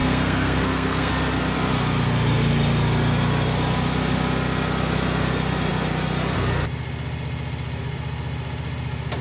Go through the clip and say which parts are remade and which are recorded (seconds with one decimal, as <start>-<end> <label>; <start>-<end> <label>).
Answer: 0.0-1.1 remade; 1.1-9.2 recorded